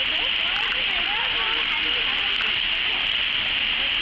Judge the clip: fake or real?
real